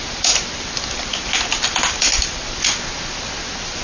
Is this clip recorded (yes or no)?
yes